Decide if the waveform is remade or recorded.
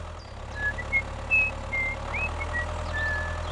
recorded